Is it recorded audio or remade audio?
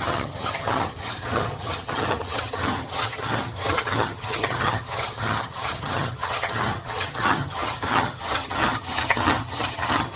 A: remade